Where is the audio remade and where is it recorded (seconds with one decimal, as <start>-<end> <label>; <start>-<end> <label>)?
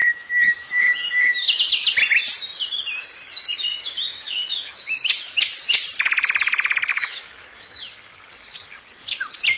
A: 0.0-1.6 remade; 1.6-3.7 recorded; 3.7-5.4 remade; 5.4-6.9 recorded; 6.9-7.8 remade; 7.8-9.6 recorded